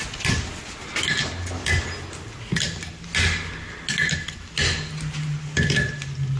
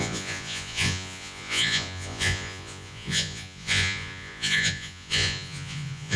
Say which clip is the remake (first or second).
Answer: second